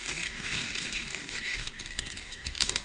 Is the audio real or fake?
fake